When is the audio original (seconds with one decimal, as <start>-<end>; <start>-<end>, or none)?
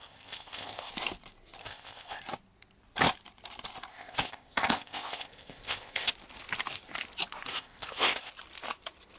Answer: 0.9-1.6; 2.2-3.9; 6.1-7.5; 8.3-9.2